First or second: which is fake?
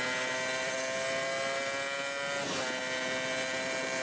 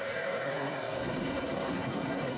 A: second